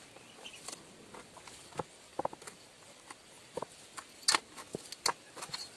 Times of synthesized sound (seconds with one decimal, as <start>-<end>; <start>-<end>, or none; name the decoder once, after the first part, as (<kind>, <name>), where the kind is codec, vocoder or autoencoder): none